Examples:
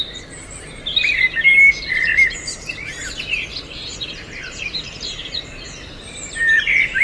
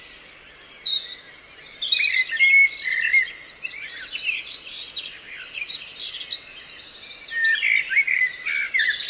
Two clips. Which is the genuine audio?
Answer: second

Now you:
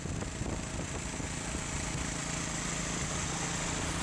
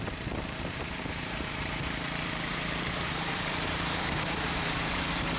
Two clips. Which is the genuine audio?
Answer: first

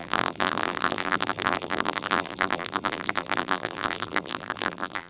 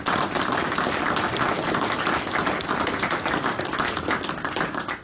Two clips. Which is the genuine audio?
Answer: second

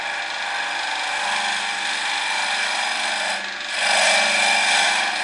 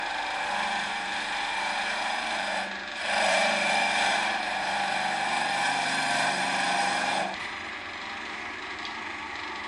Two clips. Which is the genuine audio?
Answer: first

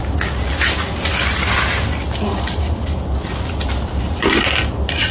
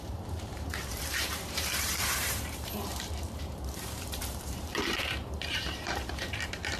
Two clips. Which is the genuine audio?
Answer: first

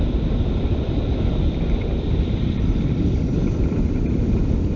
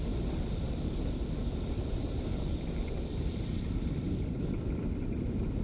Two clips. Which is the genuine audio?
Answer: second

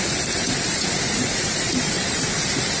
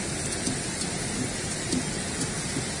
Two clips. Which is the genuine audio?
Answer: second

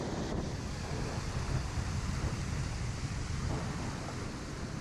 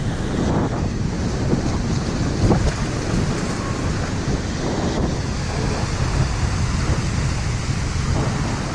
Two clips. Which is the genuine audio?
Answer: second